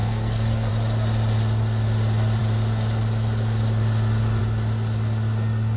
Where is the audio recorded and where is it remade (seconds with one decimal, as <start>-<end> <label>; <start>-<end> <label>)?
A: 0.0-0.7 remade; 0.7-5.8 recorded